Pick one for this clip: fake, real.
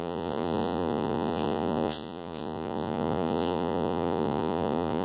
fake